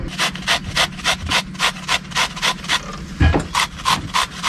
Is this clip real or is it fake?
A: real